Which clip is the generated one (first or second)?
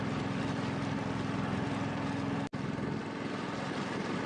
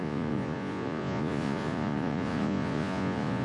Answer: second